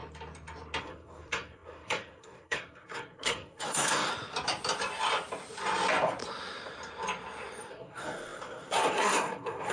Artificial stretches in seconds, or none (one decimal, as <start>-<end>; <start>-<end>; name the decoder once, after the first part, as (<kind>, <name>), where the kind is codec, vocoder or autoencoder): 0.8-4.1 (codec, SNAC); 7.7-9.7